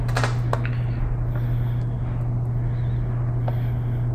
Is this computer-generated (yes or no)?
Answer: no